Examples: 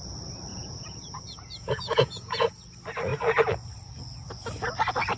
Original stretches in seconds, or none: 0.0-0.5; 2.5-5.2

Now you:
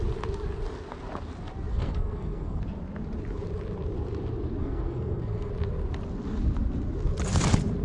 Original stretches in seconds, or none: 0.0-1.7; 2.6-4.6; 5.5-7.8